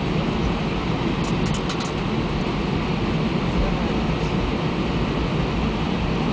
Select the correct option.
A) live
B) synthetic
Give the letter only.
A